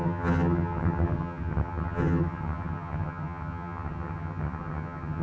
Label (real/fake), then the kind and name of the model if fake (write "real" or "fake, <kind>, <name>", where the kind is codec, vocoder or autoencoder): fake, vocoder, HiFi-GAN